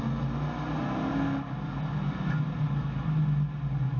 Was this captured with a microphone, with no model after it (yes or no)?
yes